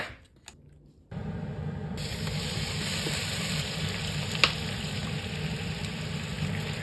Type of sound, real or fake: real